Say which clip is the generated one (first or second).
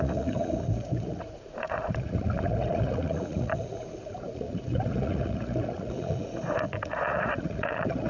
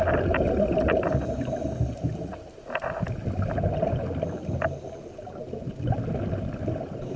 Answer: first